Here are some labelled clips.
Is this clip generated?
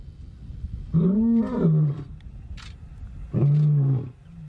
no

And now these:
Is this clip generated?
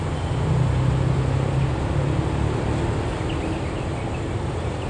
no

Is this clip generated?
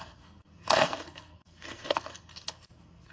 yes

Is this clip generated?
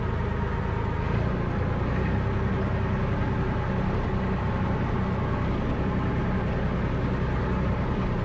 no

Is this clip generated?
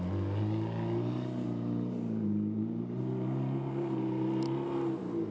no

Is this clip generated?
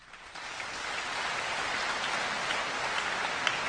no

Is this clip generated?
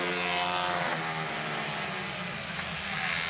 no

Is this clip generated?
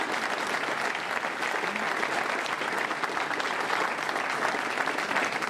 no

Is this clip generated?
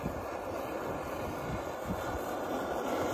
no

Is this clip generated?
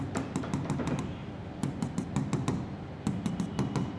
no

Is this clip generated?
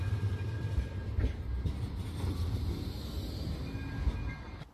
no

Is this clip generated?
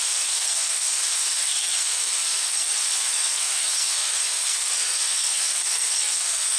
yes